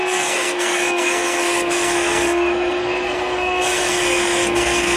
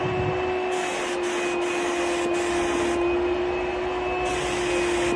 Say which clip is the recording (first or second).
second